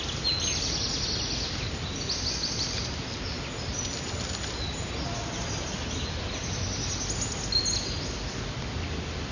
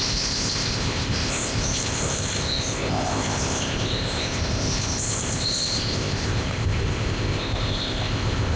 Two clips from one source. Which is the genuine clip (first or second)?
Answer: first